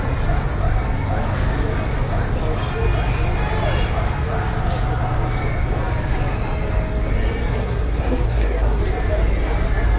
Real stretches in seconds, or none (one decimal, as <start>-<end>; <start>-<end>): 0.0-7.5; 8.8-10.0

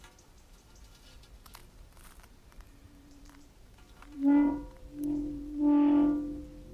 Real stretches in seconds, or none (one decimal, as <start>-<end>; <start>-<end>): 0.0-1.6; 5.6-6.7

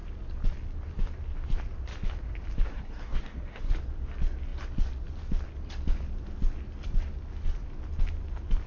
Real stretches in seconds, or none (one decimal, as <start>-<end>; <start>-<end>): 0.0-2.7; 3.7-8.7

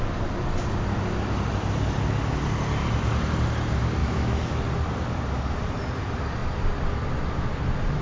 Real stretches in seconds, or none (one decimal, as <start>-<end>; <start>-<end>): 0.0-4.0; 4.6-8.0

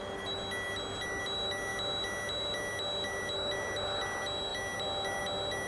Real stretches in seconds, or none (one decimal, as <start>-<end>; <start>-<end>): 0.0-5.7

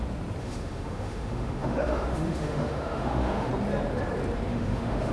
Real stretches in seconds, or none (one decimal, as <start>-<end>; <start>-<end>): 0.0-0.4; 3.5-4.5